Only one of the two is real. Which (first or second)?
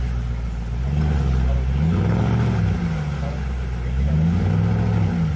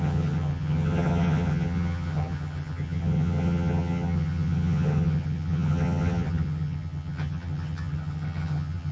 first